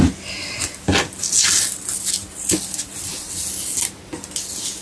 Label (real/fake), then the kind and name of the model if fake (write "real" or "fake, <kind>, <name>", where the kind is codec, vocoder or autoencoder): real